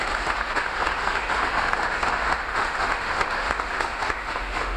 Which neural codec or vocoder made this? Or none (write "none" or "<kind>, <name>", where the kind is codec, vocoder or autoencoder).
autoencoder, DAC-VAE